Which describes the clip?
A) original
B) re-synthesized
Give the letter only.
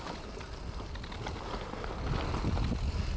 A